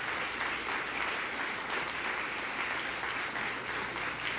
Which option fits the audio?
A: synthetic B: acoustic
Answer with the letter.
B